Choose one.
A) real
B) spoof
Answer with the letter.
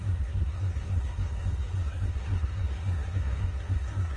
B